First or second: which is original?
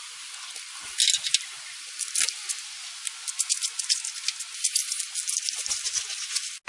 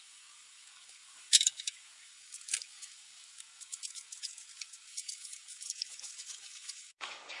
first